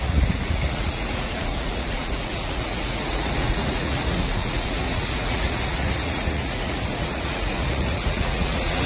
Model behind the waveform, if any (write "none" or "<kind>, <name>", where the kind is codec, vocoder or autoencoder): vocoder, Vocos